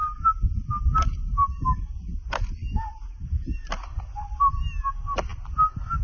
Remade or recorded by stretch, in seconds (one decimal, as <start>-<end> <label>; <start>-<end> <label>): 0.0-3.9 recorded; 3.9-4.4 remade; 4.4-6.0 recorded